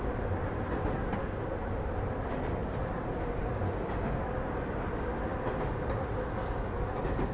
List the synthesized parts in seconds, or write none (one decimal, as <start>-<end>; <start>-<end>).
none